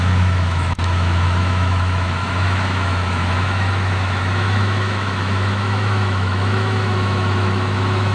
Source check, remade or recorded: remade